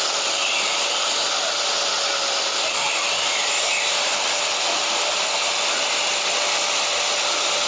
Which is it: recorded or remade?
recorded